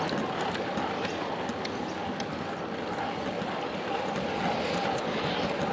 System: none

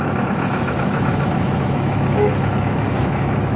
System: autoencoder, DAC-VAE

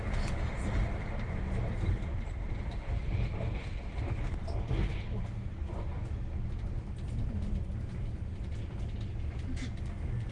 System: none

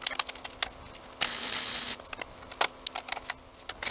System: none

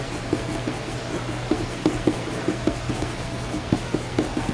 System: codec, SNAC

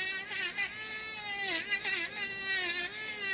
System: none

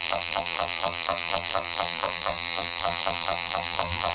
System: vocoder, BigVGAN v2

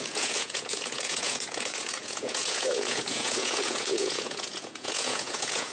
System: vocoder, Vocos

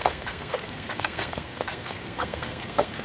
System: codec, SNAC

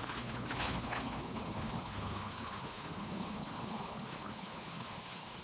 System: codec, HILCodec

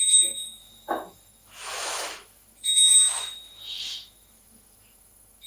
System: autoencoder, DAC-VAE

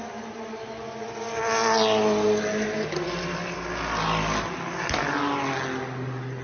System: none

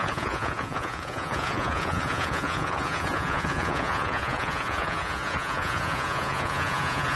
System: vocoder, Vocos